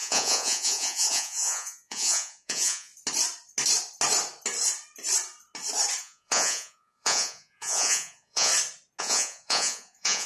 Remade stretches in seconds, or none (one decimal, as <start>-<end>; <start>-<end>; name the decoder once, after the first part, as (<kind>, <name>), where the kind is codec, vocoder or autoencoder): 0.0-2.9 (vocoder, Vocos); 6.0-8.5; 9.0-10.3